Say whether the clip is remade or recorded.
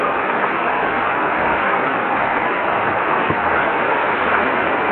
remade